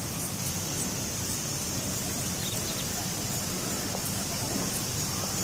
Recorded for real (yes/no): yes